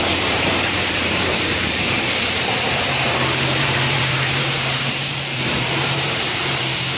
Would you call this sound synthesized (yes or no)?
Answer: yes